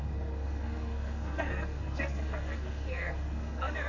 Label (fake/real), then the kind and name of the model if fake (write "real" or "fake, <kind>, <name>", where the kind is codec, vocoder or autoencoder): fake, codec, SNAC